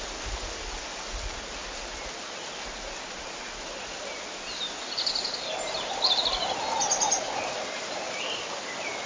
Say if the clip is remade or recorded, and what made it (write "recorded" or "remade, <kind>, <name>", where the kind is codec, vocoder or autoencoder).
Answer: recorded